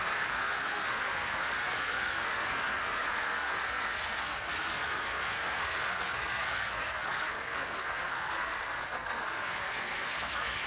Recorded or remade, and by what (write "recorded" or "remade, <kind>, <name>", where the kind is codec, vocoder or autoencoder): remade, codec, SNAC